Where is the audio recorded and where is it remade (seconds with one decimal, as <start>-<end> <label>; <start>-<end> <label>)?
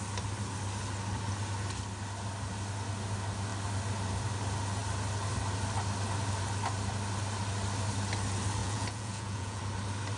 0.0-8.6 recorded; 8.6-9.6 remade; 9.6-10.2 recorded